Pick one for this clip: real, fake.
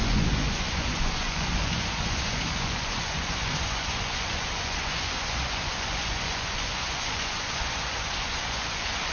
fake